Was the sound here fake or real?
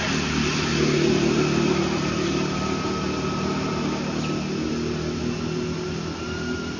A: real